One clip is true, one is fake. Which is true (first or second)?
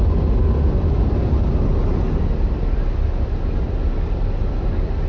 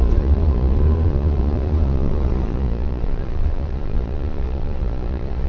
first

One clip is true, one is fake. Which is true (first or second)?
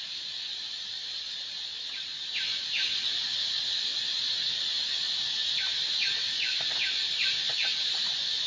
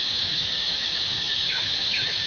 first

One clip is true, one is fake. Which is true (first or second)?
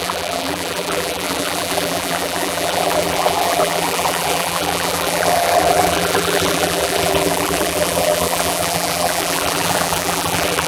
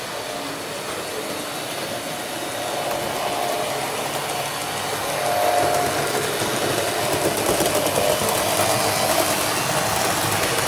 second